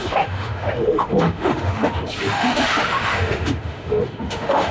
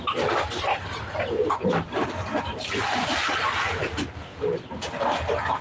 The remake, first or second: first